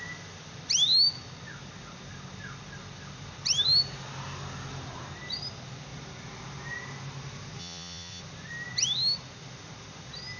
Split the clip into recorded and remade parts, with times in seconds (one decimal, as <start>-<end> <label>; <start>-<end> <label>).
0.0-7.6 recorded; 7.6-8.2 remade; 8.2-10.4 recorded